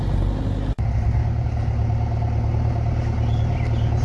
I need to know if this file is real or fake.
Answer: real